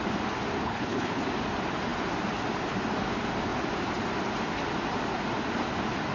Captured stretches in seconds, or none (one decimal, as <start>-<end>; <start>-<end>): 0.0-0.6; 1.2-6.1